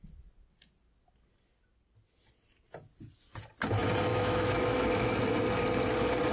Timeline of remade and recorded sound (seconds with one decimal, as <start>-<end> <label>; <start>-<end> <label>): 0.0-4.1 recorded; 4.1-5.2 remade; 5.2-6.3 recorded